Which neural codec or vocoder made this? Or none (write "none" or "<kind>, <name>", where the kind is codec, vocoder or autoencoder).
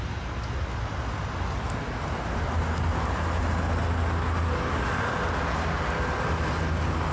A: none